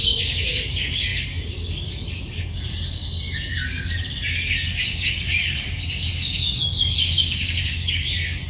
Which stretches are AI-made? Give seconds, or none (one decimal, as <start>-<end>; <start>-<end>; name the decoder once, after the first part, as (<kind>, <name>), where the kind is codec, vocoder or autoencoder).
0.0-8.5 (codec, DAC)